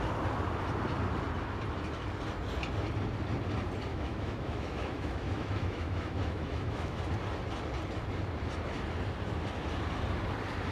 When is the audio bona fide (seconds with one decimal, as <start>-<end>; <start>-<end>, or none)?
0.0-3.9; 7.0-10.7